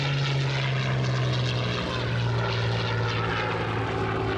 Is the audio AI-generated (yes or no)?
no